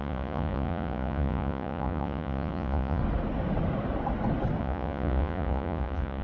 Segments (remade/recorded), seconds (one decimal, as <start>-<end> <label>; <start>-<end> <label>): 0.0-3.0 remade; 3.0-4.6 recorded; 4.6-6.2 remade